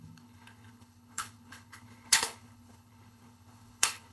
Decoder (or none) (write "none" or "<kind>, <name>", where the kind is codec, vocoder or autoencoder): codec, HILCodec